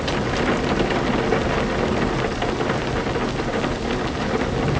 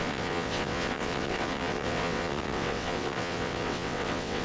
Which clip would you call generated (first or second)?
second